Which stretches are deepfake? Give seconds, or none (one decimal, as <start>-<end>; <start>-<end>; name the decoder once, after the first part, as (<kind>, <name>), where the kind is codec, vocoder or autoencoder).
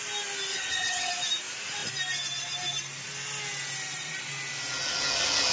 0.5-1.1 (vocoder, HiFi-GAN)